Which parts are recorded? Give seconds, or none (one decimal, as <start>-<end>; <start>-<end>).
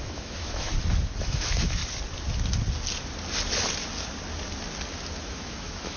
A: 0.7-1.2; 1.8-5.3